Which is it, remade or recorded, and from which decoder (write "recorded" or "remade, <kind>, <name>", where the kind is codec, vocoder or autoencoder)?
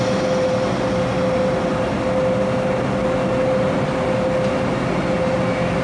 recorded